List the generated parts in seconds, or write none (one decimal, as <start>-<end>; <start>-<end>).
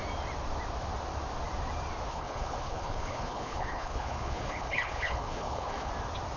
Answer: 2.1-5.9